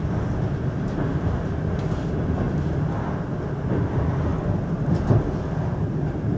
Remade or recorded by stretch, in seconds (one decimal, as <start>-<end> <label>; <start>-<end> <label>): 0.0-6.4 recorded

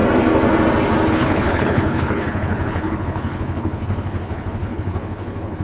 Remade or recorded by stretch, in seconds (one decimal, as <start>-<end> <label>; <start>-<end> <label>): 0.0-1.1 recorded; 1.1-5.6 remade

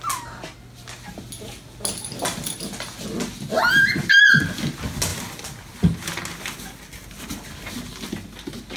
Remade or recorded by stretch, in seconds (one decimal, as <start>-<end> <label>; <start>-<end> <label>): 0.0-8.8 recorded

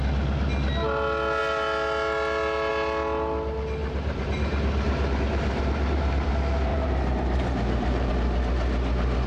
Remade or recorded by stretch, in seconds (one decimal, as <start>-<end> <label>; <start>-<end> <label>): 0.0-3.8 recorded; 3.8-6.3 remade; 6.3-6.7 recorded; 6.7-8.1 remade; 8.1-9.3 recorded

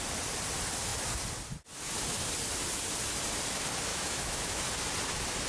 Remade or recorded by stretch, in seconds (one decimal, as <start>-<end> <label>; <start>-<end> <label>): 0.0-3.9 recorded; 3.9-4.6 remade; 4.6-5.5 recorded

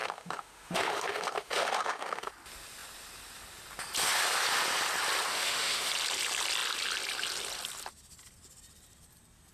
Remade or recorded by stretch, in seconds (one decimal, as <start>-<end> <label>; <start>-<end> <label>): 0.0-2.3 remade; 2.3-5.3 recorded; 5.3-5.9 remade; 5.9-9.5 recorded

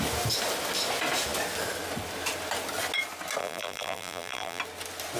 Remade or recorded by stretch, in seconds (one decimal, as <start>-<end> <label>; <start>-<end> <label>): 0.0-3.4 recorded; 3.4-4.6 remade; 4.6-5.2 recorded